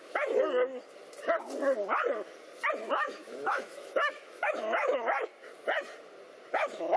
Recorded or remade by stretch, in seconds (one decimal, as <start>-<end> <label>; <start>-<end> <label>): 0.0-0.7 remade; 0.7-2.9 recorded; 2.9-5.3 remade; 5.3-6.5 recorded; 6.5-7.0 remade

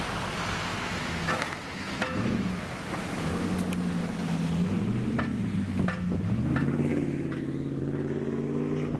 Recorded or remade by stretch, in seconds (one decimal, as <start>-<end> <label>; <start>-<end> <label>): 0.0-0.7 recorded; 0.7-3.5 remade; 3.5-6.9 recorded; 6.9-7.8 remade; 7.8-9.0 recorded

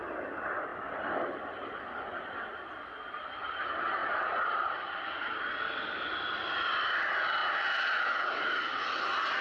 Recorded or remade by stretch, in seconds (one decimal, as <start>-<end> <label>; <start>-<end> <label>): 0.0-9.4 recorded